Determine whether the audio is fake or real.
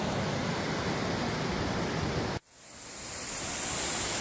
real